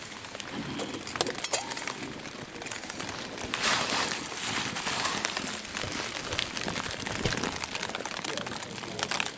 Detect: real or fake real